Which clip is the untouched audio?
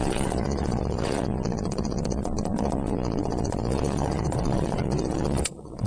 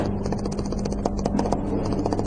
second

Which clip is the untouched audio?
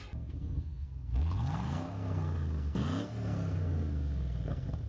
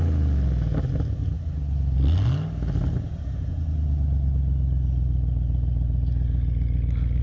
second